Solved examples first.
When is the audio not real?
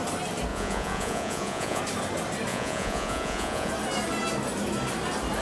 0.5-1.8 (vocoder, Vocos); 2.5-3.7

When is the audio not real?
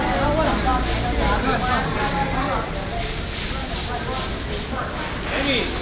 none